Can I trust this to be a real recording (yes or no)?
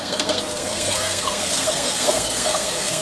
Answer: no